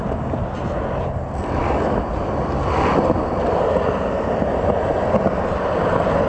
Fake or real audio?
real